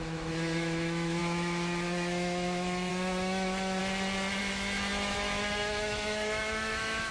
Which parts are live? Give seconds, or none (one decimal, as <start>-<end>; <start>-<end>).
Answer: 3.8-4.4